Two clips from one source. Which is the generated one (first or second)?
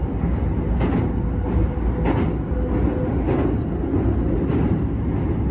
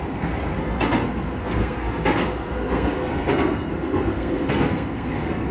second